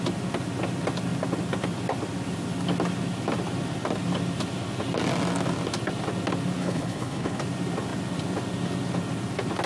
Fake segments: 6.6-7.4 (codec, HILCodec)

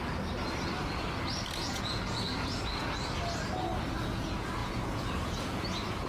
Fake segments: 1.6-2.7 (vocoder, Vocos); 4.0-6.1